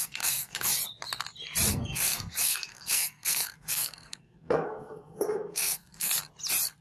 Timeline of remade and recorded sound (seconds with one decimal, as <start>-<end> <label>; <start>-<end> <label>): 0.0-0.7 remade; 0.7-1.7 recorded; 1.7-6.1 remade; 6.1-6.8 recorded